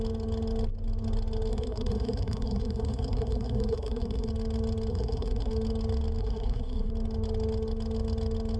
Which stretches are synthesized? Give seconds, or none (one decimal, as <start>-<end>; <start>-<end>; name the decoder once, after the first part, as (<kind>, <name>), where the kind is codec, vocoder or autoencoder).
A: 1.5-4.3 (codec, SNAC); 4.9-5.5; 6.2-6.9